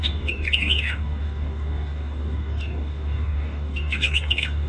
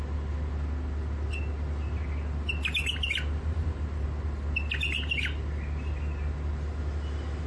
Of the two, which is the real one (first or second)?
second